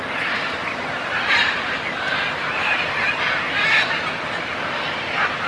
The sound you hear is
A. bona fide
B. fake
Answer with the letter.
A